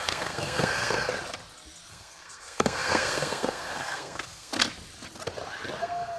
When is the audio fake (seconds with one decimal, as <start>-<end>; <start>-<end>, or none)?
0.0-1.1; 1.9-4.5; 5.8-6.2